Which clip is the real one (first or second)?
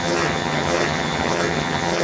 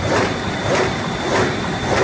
second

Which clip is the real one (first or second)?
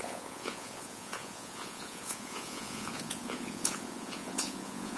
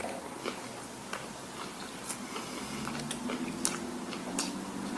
second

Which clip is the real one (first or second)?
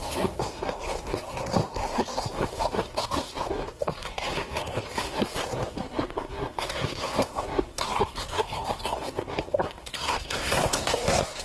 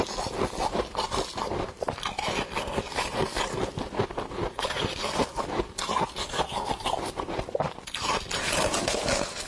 second